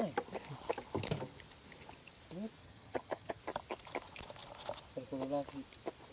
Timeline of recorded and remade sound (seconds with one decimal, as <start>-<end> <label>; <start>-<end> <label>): 0.0-2.6 recorded; 2.6-3.4 remade; 3.4-6.1 recorded

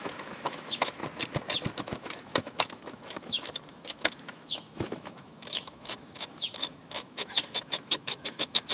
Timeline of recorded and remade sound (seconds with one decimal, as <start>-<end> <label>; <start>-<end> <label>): 0.0-1.0 remade; 1.0-1.8 recorded; 1.8-8.7 remade

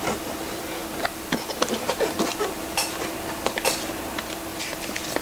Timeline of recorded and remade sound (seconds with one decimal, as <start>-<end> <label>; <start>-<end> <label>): 0.0-0.8 recorded; 0.8-3.9 remade; 3.9-5.2 recorded

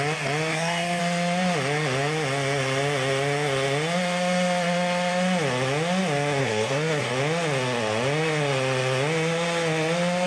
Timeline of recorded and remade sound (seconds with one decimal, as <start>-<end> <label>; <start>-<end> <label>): 0.0-0.5 recorded; 0.5-1.0 remade; 1.0-6.4 recorded; 6.4-7.1 remade; 7.1-10.3 recorded